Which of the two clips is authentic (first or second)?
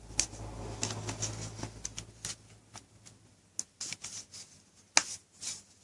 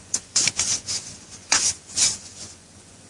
first